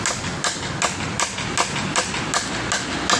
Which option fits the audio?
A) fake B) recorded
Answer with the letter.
B